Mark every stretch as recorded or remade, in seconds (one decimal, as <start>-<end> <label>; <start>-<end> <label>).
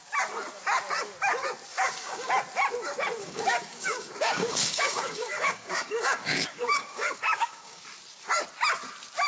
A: 0.0-1.7 recorded; 1.7-2.3 remade; 2.3-3.2 recorded; 3.2-7.8 remade; 7.8-9.3 recorded